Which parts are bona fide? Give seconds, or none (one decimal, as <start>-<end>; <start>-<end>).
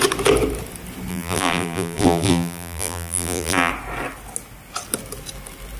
0.0-1.1; 3.7-5.8